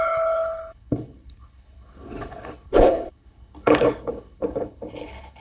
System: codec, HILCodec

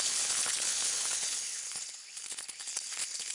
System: codec, HILCodec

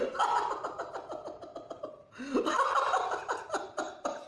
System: none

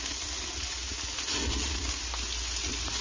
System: none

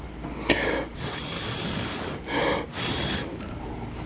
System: none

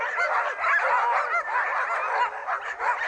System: none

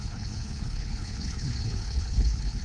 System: codec, HILCodec